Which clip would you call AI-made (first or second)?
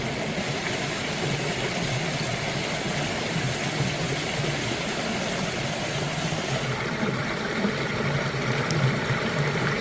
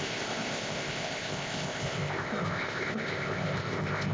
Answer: second